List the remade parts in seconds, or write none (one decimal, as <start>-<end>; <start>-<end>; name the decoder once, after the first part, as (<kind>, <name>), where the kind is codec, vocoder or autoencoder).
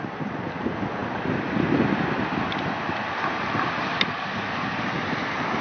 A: none